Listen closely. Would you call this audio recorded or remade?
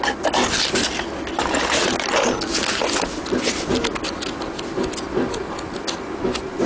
recorded